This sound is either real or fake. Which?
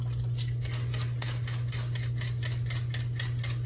real